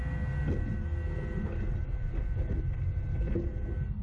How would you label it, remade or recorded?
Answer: recorded